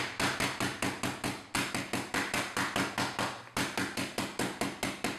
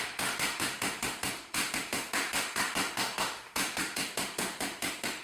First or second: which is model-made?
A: second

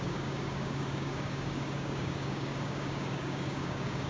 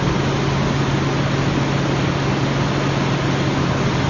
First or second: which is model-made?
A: first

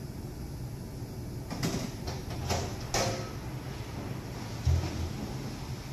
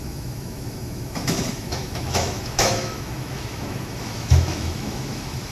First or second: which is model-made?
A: second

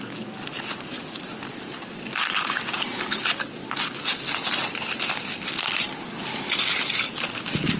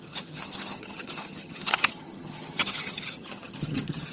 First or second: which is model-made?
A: second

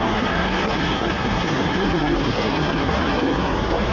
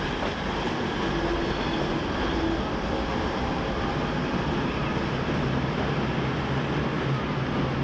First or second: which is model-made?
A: first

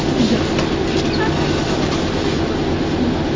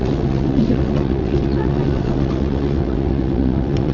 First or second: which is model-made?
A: second